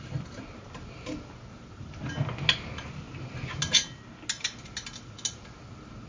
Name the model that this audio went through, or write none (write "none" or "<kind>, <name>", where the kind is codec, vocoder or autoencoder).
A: none